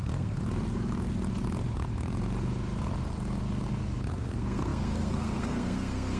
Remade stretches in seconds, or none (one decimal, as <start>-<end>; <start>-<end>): 0.0-0.4; 4.1-6.2